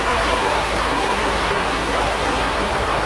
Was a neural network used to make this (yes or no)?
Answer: yes